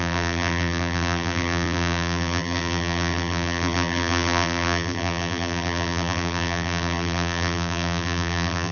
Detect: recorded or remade remade